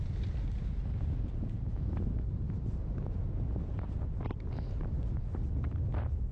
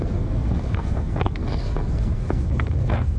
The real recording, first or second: first